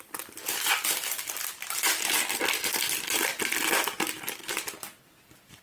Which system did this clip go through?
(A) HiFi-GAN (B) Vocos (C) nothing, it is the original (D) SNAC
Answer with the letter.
C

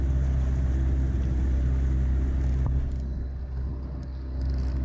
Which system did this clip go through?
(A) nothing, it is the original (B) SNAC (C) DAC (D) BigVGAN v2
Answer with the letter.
A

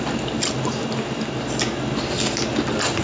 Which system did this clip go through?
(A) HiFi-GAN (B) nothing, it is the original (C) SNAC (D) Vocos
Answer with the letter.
B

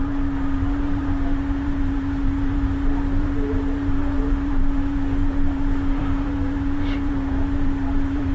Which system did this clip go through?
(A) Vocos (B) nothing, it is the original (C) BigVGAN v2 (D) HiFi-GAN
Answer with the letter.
C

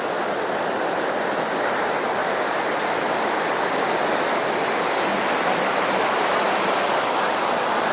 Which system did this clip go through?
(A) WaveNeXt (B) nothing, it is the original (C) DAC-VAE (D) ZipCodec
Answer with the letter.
B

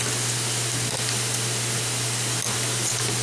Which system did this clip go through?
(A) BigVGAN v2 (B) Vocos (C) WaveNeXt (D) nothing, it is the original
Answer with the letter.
D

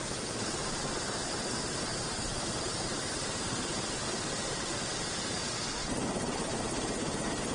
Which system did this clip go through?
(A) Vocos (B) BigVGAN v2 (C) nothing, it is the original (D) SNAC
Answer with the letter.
C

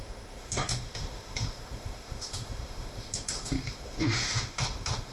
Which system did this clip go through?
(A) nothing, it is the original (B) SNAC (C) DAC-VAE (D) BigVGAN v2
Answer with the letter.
C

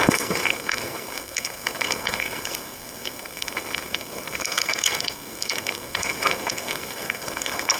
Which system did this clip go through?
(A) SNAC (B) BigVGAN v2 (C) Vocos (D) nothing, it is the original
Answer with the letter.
A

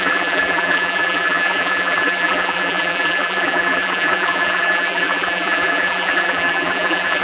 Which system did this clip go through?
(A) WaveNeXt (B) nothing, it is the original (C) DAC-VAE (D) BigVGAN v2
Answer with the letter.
D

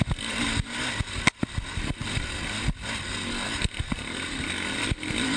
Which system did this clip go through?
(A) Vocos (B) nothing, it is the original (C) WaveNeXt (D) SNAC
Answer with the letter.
B